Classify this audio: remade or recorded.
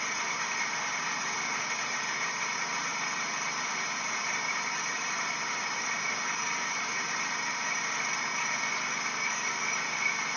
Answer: remade